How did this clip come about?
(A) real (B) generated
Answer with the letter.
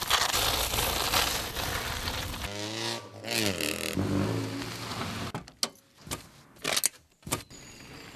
A